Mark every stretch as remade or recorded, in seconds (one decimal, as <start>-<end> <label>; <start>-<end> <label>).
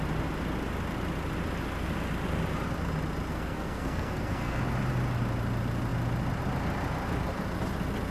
0.0-3.3 recorded; 3.3-4.6 remade; 4.6-8.1 recorded